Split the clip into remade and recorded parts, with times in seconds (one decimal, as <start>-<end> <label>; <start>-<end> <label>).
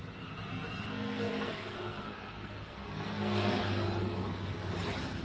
0.0-0.5 recorded; 0.5-3.6 remade; 3.6-4.0 recorded; 4.0-4.7 remade; 4.7-5.2 recorded